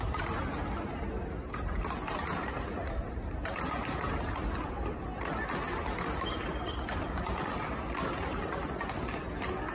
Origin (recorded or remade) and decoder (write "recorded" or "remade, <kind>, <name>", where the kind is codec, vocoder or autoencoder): recorded